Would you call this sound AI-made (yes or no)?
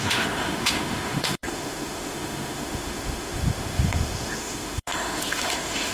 yes